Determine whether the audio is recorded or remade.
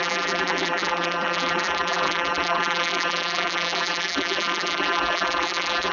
remade